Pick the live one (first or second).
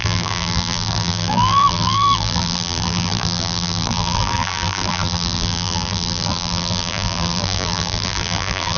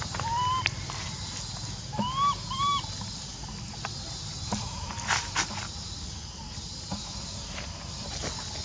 second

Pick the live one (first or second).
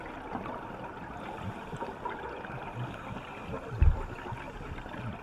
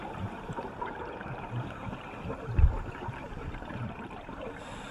first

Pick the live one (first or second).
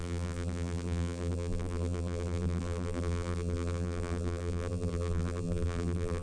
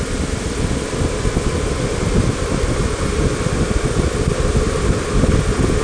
second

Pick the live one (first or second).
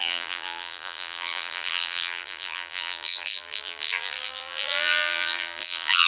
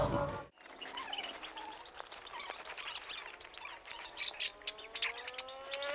second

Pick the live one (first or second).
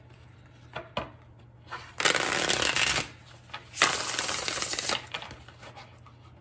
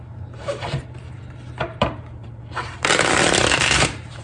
first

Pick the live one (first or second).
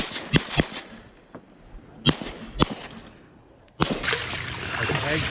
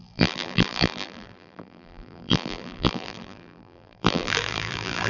first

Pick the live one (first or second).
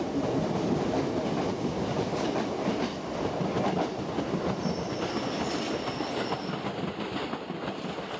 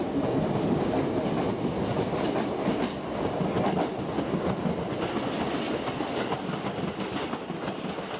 second